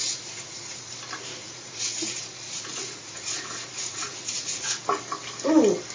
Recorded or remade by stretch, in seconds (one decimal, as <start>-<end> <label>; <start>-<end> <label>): 0.0-0.9 remade; 0.9-1.3 recorded; 1.3-4.8 remade; 4.8-5.9 recorded